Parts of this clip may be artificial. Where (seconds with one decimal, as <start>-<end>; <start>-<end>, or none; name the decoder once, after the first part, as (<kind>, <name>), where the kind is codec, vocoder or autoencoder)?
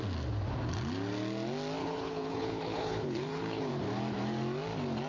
1.8-3.7 (codec, HILCodec)